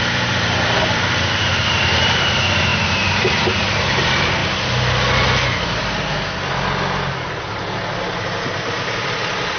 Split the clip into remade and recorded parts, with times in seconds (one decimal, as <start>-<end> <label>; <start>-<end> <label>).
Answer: 0.0-4.4 remade; 4.4-8.4 recorded; 8.4-9.6 remade

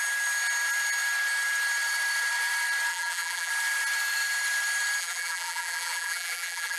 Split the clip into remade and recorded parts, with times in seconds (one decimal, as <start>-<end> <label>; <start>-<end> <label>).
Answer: 0.0-2.9 recorded; 2.9-3.5 remade; 3.5-5.0 recorded; 5.0-6.8 remade

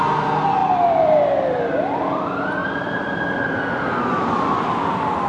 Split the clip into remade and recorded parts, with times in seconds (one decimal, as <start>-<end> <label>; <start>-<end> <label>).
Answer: 0.0-0.6 recorded; 0.6-1.6 remade; 1.6-2.6 recorded; 2.6-3.6 remade; 3.6-5.3 recorded

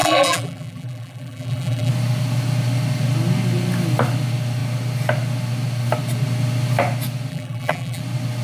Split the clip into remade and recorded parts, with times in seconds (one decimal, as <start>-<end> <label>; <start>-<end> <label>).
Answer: 0.0-1.9 remade; 1.9-7.3 recorded; 7.3-8.0 remade; 8.0-8.4 recorded

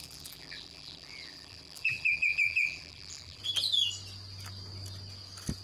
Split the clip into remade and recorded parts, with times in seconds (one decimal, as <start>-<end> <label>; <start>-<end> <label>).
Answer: 0.0-3.4 remade; 3.4-5.6 recorded

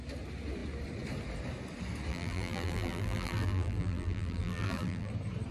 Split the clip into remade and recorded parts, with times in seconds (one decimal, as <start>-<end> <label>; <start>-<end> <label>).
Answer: 0.0-2.1 recorded; 2.1-5.1 remade; 5.1-5.5 recorded